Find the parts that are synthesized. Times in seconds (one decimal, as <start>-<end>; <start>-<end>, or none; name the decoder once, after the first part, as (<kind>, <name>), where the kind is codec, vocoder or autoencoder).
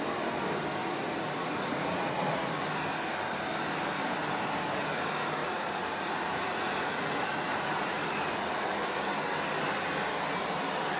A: 0.8-2.5 (vocoder, Vocos); 5.4-8.8